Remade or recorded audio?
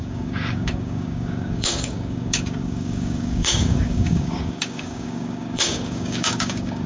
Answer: remade